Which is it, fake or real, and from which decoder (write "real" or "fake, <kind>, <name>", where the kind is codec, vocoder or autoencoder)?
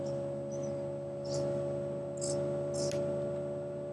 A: real